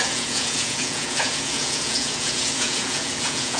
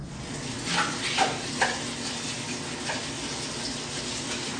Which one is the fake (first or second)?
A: first